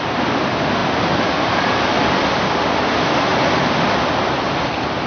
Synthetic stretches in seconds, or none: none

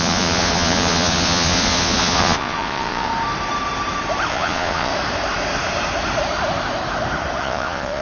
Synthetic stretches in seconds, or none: 0.0-3.1 (vocoder, Vocos); 4.3-4.9; 7.4-8.0

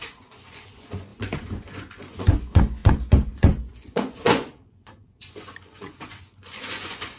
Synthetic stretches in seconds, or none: 0.0-7.2 (vocoder, Vocos)

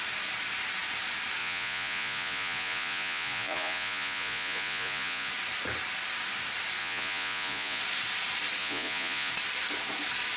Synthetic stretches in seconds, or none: 1.4-5.3 (vocoder, Vocos); 6.8-7.8; 8.6-9.3

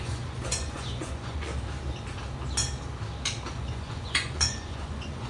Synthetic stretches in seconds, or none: 0.0-1.5 (vocoder, Vocos); 3.5-5.3